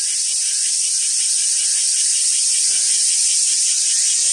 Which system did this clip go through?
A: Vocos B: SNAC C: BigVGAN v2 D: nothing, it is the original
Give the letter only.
D